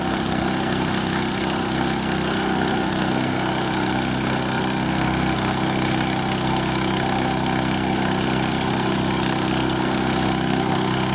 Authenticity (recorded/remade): remade